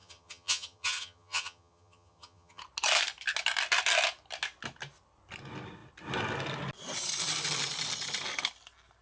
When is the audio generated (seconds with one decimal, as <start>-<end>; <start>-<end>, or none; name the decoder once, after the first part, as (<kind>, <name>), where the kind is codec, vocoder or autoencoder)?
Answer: 0.0-2.6 (vocoder, HiFi-GAN)